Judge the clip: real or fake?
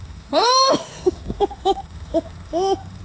fake